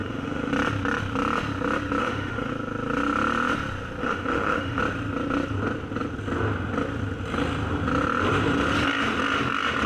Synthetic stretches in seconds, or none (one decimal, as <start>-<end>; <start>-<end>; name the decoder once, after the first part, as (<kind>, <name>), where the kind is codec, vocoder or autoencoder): 0.0-0.5 (autoencoder, DAC-VAE); 2.0-2.5; 4.0-4.8